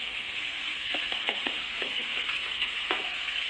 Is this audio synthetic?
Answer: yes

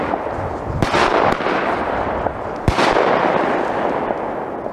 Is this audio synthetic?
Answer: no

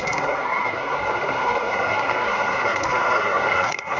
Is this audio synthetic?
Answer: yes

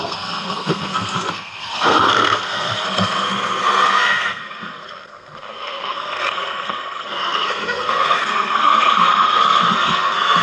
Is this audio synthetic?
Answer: yes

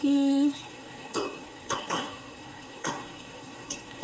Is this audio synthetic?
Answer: yes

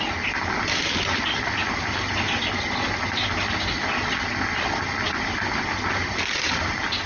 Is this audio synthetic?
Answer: no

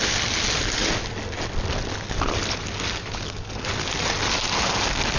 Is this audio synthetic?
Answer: no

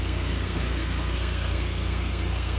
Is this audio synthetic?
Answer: yes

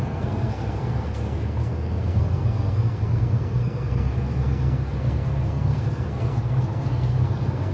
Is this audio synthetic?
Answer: yes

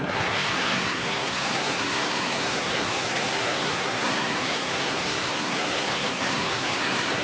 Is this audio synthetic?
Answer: yes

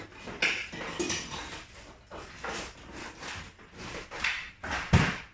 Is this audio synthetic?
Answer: no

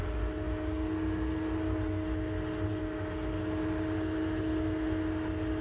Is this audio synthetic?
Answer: no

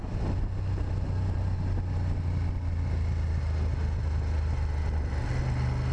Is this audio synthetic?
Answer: no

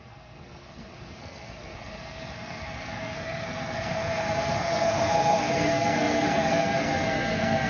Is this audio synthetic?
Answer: yes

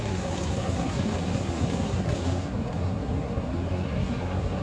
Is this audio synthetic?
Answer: yes